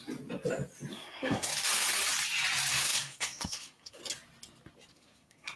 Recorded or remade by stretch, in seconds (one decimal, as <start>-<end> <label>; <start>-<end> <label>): 0.0-0.9 recorded; 0.9-1.5 remade; 1.5-2.7 recorded; 2.7-4.0 remade; 4.0-4.9 recorded; 4.9-5.6 remade